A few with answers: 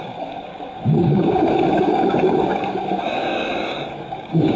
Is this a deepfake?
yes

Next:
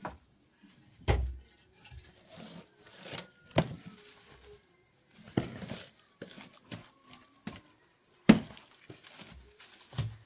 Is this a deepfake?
no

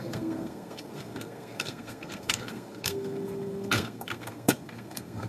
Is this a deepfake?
yes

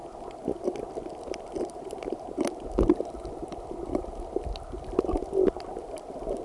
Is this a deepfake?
no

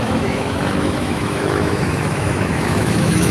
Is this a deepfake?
yes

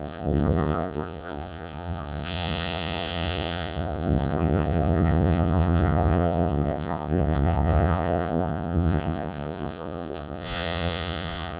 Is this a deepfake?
yes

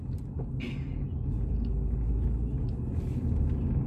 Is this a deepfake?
no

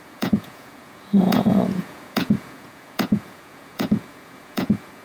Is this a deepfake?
yes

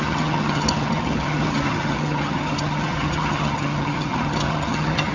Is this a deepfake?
yes